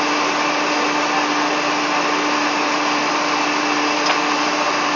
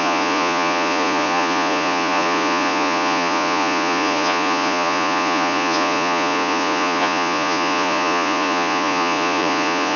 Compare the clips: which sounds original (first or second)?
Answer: first